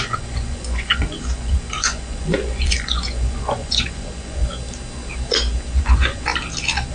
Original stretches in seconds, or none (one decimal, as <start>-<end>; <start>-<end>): 4.4-5.7; 6.3-6.9